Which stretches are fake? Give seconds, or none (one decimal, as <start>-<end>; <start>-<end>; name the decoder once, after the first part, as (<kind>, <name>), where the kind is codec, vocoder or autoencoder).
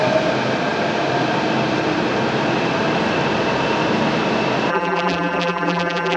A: 4.7-6.2 (vocoder, BigVGAN v2)